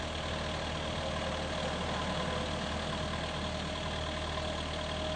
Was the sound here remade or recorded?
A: recorded